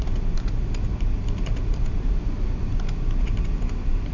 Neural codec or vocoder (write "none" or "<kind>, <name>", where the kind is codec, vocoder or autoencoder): none